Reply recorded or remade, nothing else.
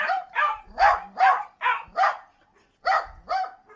recorded